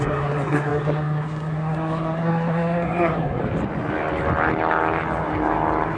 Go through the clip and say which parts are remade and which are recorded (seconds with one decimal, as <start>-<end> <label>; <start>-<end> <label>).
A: 0.0-3.4 remade; 3.4-6.0 recorded